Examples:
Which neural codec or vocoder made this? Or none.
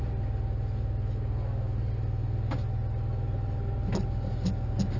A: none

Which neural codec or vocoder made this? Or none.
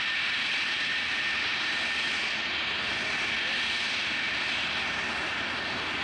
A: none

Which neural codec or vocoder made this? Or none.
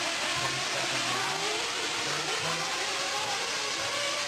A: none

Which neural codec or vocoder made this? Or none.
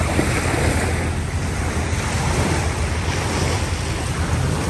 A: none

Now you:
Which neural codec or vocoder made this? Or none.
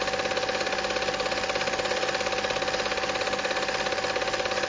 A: none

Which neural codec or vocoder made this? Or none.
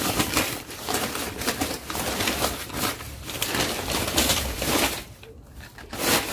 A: vocoder, BigVGAN v2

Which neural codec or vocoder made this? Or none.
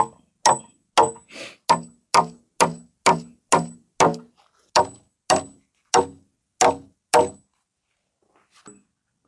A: none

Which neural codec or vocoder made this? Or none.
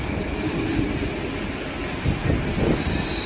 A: none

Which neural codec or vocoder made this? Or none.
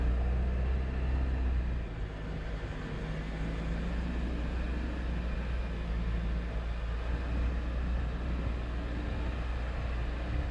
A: none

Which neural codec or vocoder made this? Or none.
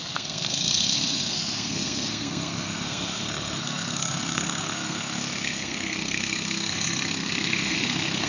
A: codec, SNAC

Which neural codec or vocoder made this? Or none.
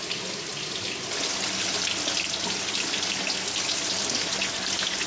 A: none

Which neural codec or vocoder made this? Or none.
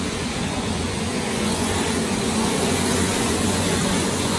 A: vocoder, Vocos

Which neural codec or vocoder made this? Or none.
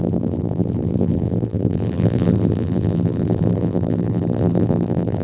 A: vocoder, BigVGAN v2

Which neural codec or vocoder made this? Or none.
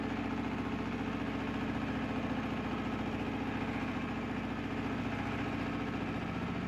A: none